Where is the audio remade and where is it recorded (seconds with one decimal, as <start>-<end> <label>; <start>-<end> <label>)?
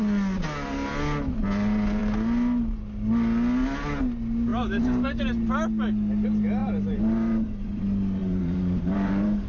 0.0-4.5 recorded; 4.5-5.2 remade; 5.2-6.6 recorded; 6.6-7.8 remade; 7.8-8.2 recorded; 8.2-9.5 remade